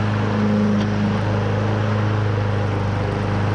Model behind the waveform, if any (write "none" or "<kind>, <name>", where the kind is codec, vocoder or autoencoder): none